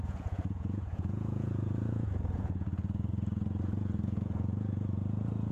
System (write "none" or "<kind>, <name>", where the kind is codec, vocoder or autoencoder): vocoder, Vocos